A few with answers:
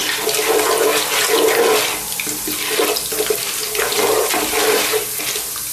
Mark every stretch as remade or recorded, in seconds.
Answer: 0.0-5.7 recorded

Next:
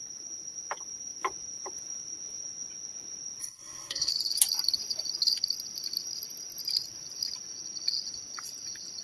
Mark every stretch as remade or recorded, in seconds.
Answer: 0.0-3.4 recorded; 3.4-4.1 remade; 4.1-9.0 recorded

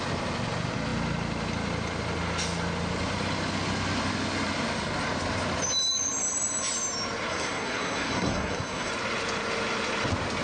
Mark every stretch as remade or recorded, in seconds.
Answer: 0.0-7.3 recorded; 7.3-8.9 remade; 8.9-10.4 recorded

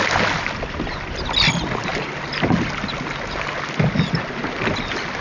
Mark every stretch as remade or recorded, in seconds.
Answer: 0.0-5.2 recorded

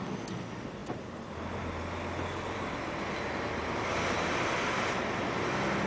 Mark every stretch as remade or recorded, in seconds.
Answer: 0.0-5.9 recorded

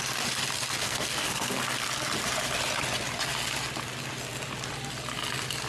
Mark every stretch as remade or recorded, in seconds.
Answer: 0.0-0.8 recorded; 0.8-1.6 remade; 1.6-5.7 recorded

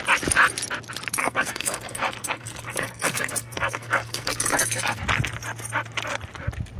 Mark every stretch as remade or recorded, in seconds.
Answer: 0.0-1.2 recorded; 1.2-5.0 remade; 5.0-6.8 recorded

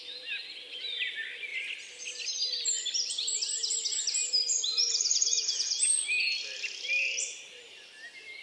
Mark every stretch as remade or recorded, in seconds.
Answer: 0.0-8.4 recorded